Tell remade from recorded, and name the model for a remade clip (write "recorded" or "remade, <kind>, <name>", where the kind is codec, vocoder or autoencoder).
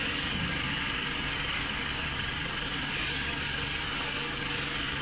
remade, codec, DAC